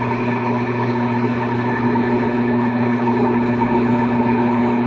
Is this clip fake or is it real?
fake